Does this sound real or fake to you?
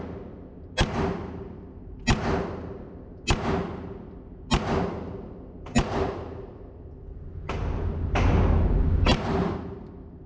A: real